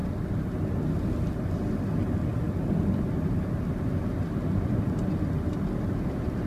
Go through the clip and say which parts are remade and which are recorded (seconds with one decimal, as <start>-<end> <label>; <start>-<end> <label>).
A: 0.0-6.5 recorded